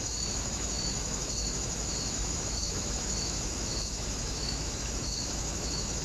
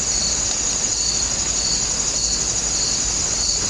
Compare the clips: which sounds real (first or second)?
second